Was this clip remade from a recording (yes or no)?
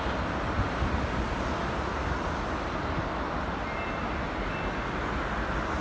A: no